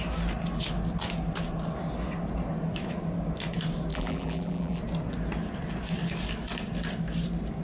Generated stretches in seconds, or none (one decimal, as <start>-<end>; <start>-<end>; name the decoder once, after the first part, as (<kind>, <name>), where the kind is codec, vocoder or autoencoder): 3.9-4.8 (vocoder, BigVGAN v2)